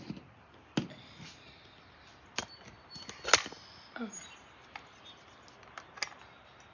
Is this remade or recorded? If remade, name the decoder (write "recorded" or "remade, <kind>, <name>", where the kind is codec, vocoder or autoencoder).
recorded